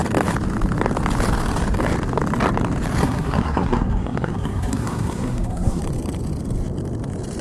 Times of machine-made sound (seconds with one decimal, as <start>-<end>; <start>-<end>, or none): 3.0-5.8